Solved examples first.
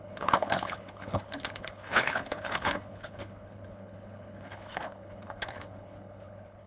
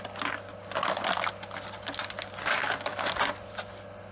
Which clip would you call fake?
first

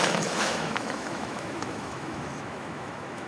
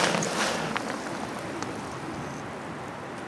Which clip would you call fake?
first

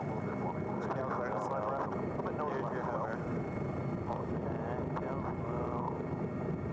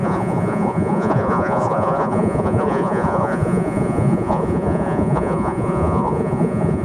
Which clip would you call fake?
second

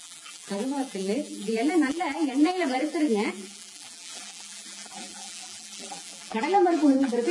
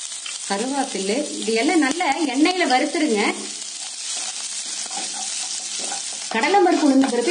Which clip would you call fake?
first